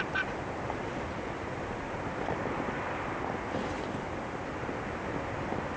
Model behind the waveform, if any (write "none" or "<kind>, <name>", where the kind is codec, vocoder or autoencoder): none